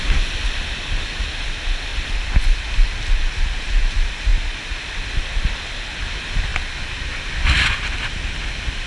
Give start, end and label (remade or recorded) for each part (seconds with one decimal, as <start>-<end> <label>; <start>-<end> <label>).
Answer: 0.0-8.9 recorded